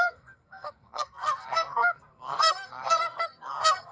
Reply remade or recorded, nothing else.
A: remade